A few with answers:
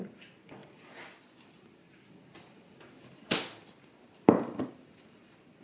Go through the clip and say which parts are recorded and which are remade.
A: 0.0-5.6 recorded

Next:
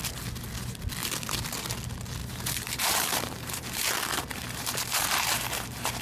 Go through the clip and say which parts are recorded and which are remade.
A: 0.0-2.2 recorded; 2.2-6.0 remade

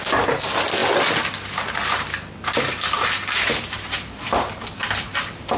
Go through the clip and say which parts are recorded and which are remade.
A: 0.0-5.6 recorded

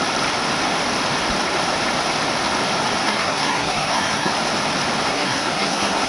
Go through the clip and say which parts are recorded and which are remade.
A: 0.0-3.0 recorded; 3.0-4.3 remade; 4.3-5.1 recorded; 5.1-6.1 remade

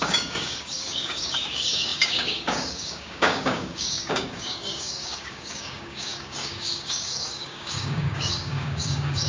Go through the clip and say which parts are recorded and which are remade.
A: 0.0-9.3 remade

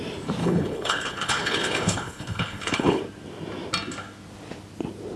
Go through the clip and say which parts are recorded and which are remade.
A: 0.0-0.4 recorded; 0.4-3.0 remade; 3.0-5.2 recorded

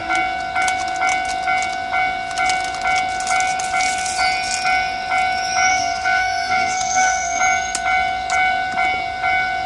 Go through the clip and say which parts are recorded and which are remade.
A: 0.0-5.7 recorded; 5.7-7.4 remade; 7.4-9.7 recorded

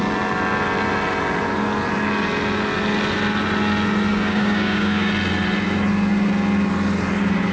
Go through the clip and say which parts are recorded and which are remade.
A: 0.0-4.1 recorded; 4.1-5.1 remade; 5.1-7.5 recorded